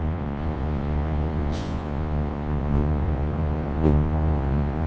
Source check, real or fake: fake